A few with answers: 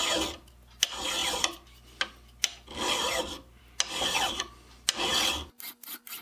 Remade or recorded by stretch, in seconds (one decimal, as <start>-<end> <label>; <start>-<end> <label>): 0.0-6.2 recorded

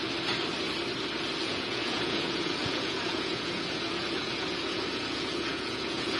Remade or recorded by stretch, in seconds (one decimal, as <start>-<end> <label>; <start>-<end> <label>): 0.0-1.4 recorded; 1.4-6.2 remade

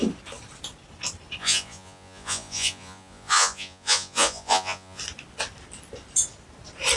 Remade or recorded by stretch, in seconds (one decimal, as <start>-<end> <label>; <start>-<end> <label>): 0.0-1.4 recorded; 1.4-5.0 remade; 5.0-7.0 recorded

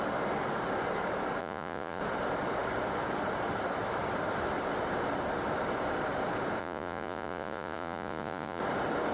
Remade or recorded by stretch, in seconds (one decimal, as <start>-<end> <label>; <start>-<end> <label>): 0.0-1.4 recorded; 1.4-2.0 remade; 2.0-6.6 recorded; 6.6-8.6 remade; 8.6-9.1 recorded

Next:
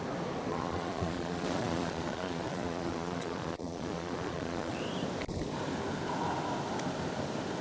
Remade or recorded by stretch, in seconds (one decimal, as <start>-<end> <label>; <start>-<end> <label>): 0.0-0.5 recorded; 0.5-4.8 remade; 4.8-7.6 recorded

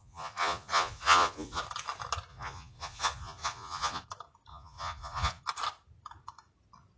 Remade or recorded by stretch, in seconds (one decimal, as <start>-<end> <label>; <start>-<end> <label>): 0.0-1.6 remade; 1.6-2.3 recorded; 2.3-4.0 remade; 4.0-4.5 recorded; 4.5-5.4 remade; 5.4-7.0 recorded

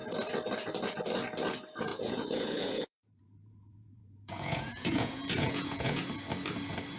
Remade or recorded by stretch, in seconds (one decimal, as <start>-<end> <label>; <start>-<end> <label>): 0.0-1.9 recorded; 1.9-6.0 remade; 6.0-7.0 recorded

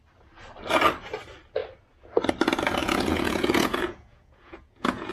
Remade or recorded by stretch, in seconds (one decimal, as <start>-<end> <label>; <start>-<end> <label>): 0.0-2.8 recorded; 2.8-5.1 remade